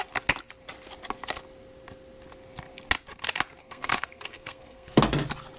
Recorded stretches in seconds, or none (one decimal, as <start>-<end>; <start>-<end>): 0.0-3.6; 5.0-5.6